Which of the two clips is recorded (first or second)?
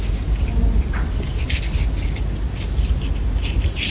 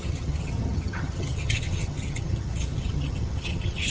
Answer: first